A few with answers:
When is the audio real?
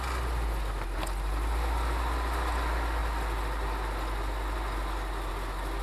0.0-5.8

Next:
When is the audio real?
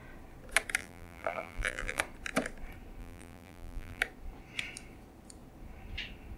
0.0-0.8; 2.0-3.0; 4.0-6.4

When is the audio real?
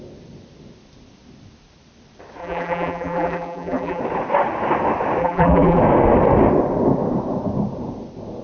0.0-2.4; 4.0-5.2; 5.8-8.4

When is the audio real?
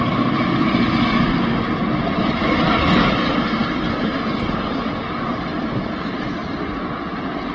0.0-7.5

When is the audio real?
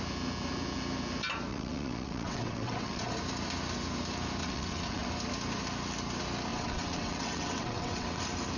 0.0-1.5; 3.1-4.4; 5.1-6.5; 8.2-8.6